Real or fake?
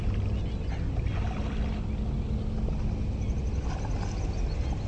real